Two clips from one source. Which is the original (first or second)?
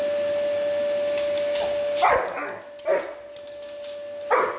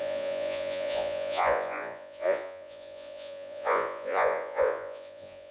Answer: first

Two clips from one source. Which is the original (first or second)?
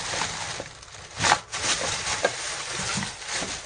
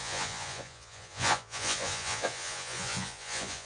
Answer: first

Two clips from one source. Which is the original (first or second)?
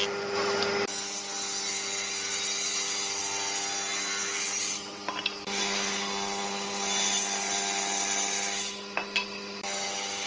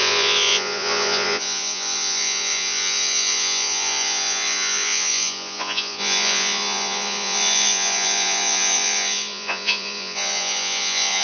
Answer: first